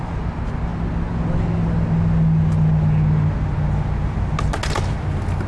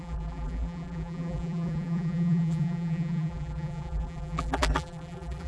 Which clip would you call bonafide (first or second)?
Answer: first